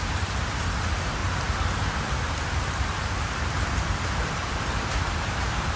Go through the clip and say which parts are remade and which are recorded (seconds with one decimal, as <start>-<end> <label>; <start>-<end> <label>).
0.0-1.2 remade; 1.2-4.1 recorded; 4.1-5.8 remade